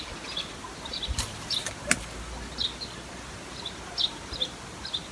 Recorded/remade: recorded